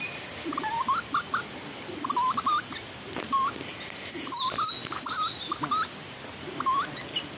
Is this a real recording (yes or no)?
yes